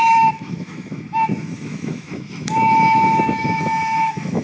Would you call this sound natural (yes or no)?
no